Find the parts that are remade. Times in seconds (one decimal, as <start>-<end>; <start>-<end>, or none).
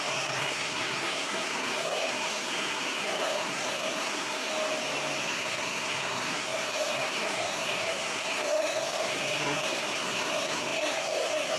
0.0-4.5; 5.2-11.6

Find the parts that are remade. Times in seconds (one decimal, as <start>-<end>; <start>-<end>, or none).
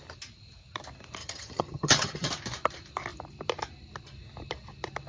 1.2-2.3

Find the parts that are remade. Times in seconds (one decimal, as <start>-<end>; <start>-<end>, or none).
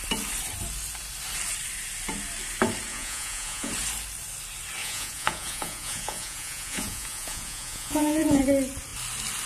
2.9-3.7; 4.8-8.4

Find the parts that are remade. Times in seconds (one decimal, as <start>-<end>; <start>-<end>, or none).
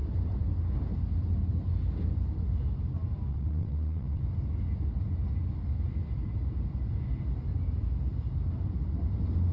3.3-4.2